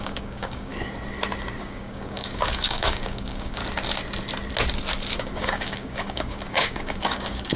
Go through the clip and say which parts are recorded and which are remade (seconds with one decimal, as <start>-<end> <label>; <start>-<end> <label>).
0.0-0.7 remade; 0.7-1.6 recorded; 1.6-3.6 remade; 3.6-5.2 recorded; 5.2-7.6 remade